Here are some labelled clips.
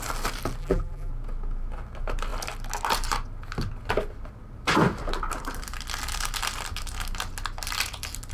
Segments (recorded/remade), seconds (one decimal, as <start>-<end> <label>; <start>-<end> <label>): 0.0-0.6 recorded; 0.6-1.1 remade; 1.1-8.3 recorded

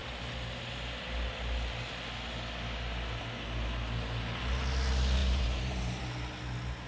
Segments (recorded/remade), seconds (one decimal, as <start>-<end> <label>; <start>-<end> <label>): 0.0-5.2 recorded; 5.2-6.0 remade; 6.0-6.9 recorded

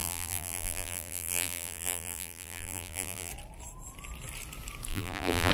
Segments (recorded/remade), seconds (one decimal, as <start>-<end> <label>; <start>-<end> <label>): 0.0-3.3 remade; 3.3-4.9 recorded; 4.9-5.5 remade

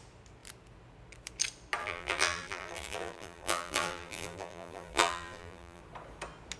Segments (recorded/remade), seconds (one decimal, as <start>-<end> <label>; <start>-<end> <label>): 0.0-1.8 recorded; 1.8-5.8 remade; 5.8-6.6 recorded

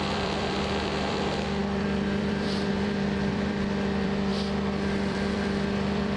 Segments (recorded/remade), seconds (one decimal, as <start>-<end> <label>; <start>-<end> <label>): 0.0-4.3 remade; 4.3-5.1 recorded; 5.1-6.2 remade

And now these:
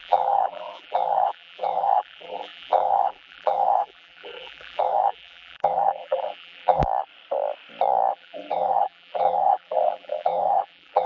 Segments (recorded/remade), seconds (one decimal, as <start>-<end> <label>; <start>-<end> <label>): 0.0-6.8 remade; 6.8-8.1 recorded; 8.1-11.1 remade